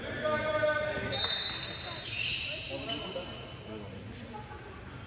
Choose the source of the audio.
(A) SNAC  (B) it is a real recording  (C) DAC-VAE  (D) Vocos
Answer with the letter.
B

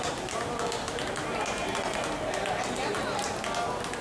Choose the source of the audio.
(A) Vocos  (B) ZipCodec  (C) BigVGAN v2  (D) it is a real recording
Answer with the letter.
D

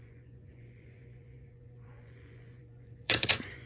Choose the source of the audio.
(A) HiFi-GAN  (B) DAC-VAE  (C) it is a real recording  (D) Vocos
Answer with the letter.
D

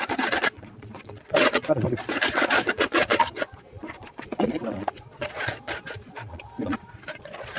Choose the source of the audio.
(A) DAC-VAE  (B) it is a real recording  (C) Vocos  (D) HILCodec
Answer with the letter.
C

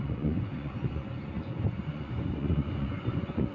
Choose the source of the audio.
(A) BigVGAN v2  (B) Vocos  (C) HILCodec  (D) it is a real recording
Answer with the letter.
B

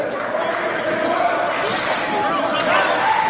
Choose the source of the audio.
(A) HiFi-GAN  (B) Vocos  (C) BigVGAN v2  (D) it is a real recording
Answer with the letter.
D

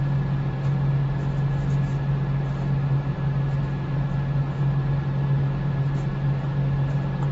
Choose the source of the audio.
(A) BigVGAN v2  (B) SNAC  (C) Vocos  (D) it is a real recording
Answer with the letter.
D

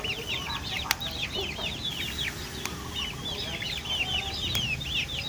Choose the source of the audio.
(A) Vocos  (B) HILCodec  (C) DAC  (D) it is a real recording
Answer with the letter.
D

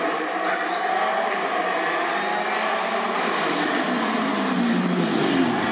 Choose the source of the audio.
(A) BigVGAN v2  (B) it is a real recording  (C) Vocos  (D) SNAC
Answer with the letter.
B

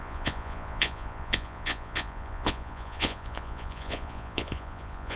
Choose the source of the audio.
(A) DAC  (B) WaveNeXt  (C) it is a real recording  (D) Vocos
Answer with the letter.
D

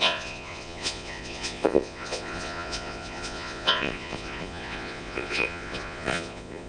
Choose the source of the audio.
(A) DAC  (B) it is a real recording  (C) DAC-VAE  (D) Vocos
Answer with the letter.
D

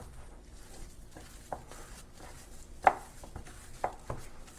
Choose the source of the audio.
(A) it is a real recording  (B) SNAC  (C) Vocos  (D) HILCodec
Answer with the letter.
A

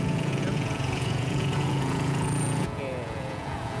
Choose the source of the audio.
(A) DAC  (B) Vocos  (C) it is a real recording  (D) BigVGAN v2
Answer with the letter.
B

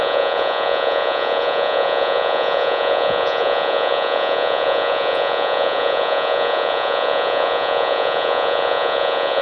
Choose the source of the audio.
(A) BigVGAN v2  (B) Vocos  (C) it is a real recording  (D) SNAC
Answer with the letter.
B